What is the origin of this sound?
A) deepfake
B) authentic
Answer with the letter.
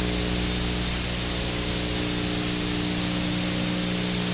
B